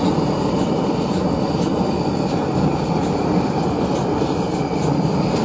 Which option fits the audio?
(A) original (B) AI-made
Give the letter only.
A